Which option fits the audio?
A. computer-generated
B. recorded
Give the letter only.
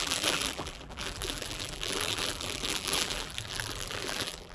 A